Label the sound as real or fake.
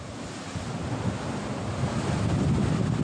real